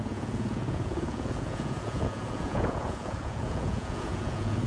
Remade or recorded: remade